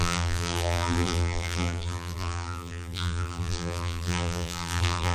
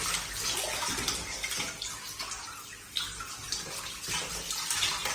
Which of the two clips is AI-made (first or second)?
first